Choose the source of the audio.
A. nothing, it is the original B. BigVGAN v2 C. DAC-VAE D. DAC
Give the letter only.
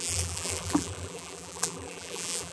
B